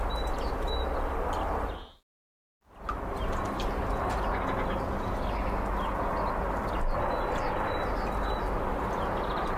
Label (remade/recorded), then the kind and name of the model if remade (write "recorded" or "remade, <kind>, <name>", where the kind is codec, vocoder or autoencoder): recorded